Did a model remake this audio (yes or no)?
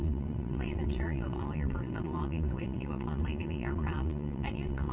yes